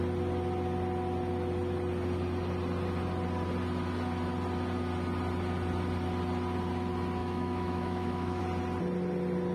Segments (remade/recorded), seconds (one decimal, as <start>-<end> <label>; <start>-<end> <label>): 0.0-7.2 recorded; 7.2-8.4 remade; 8.4-9.5 recorded